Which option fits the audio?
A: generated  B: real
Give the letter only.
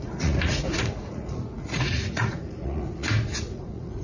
A